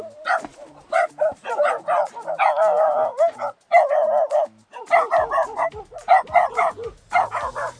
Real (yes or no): yes